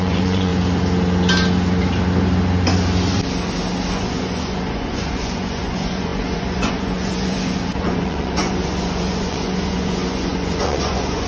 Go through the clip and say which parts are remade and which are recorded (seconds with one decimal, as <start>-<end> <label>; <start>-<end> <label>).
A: 0.0-0.5 remade; 0.5-3.9 recorded; 3.9-11.3 remade

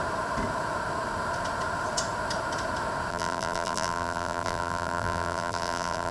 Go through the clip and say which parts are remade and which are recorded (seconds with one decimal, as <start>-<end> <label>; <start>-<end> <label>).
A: 0.0-3.1 recorded; 3.1-6.1 remade

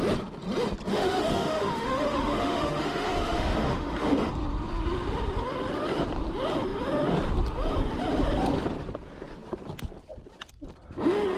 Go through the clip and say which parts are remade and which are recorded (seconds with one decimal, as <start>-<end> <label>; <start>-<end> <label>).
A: 0.0-0.9 recorded; 0.9-4.3 remade; 4.3-11.4 recorded

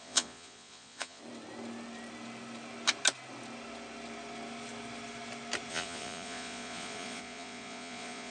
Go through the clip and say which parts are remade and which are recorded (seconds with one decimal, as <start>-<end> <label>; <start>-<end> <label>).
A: 0.0-1.2 remade; 1.2-5.7 recorded; 5.7-8.3 remade